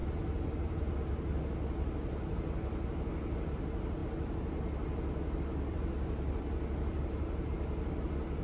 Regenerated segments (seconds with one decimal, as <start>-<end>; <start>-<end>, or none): none